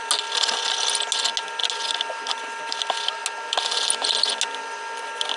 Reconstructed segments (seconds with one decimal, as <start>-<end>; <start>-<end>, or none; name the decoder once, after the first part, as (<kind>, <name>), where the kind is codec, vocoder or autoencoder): none